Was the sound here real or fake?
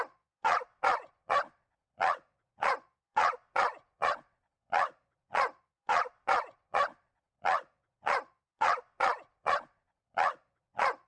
fake